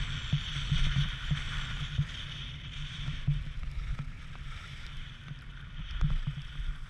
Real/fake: fake